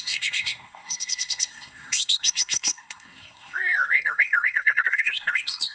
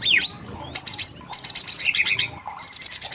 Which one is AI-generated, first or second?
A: first